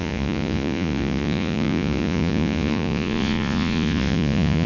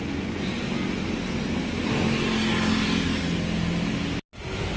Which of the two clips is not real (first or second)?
first